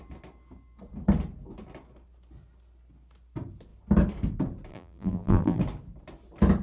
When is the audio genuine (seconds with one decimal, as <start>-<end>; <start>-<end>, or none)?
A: 0.0-4.7; 5.6-6.6